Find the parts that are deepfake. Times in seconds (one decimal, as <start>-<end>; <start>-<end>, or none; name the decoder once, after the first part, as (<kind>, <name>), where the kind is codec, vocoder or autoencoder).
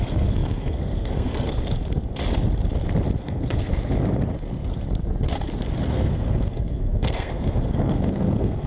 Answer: 0.0-2.0 (codec, SNAC); 3.2-3.7; 5.9-8.7